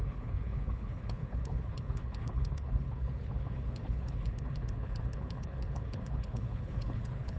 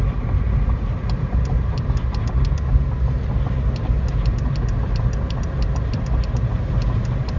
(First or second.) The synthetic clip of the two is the first